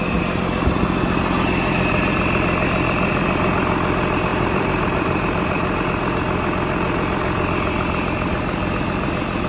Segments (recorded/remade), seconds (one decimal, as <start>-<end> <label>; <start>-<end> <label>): 0.0-4.3 recorded; 4.3-5.8 remade; 5.8-9.5 recorded

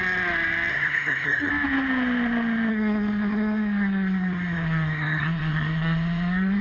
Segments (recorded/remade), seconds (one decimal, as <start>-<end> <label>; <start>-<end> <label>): 0.0-0.7 recorded; 0.7-1.5 remade; 1.5-2.7 recorded; 2.7-6.6 remade

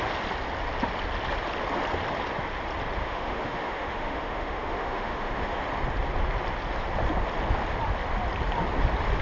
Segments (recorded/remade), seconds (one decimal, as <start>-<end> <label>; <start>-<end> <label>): 0.0-3.0 recorded; 3.0-5.6 remade; 5.6-9.2 recorded

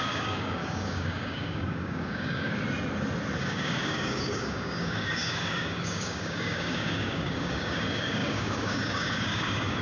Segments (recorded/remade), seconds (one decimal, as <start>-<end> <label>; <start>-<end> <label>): 0.0-2.6 remade; 2.6-3.4 recorded; 3.4-9.8 remade

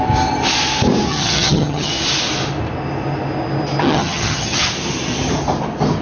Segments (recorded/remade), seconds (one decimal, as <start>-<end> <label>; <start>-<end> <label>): 0.0-1.1 recorded; 1.1-1.9 remade; 1.9-3.8 recorded; 3.8-4.7 remade; 4.7-6.0 recorded